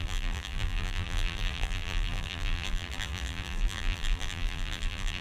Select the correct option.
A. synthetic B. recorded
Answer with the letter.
A